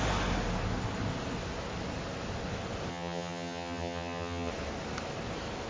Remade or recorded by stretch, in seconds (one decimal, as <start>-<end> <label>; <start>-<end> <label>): 0.0-2.9 recorded; 2.9-4.5 remade; 4.5-5.7 recorded